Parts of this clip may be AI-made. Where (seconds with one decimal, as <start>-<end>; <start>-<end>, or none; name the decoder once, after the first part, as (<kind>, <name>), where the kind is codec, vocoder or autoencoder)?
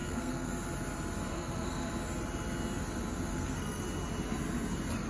0.0-0.5 (codec, SNAC); 1.3-1.9; 3.3-3.8